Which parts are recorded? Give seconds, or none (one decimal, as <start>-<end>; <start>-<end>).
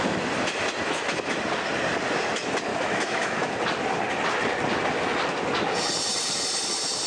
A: 0.0-2.7; 3.5-7.1